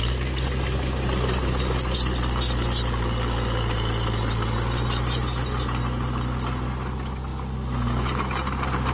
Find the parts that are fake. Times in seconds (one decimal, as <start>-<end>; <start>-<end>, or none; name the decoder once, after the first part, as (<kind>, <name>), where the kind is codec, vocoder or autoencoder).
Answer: none